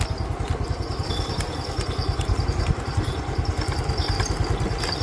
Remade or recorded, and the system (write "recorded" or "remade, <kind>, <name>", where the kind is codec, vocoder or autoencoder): recorded